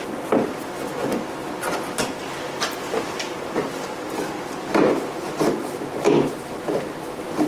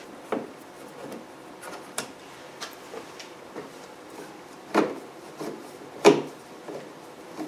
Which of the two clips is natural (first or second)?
first